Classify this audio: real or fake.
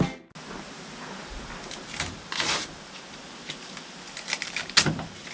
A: real